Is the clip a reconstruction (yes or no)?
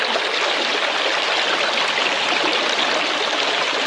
no